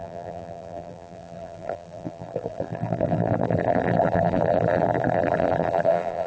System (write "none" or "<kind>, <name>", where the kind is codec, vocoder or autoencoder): vocoder, BigVGAN v2